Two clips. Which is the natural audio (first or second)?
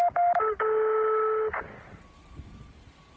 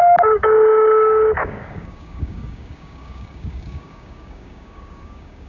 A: first